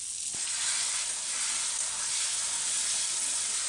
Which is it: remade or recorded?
recorded